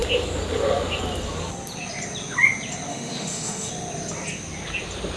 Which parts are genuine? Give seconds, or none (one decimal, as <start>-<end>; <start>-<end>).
0.0-2.9; 3.7-5.2